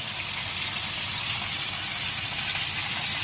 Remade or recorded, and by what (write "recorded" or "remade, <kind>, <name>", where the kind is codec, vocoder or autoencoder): recorded